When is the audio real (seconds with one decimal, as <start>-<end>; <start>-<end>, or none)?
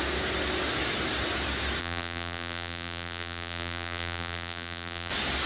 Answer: 0.0-1.8; 5.1-5.5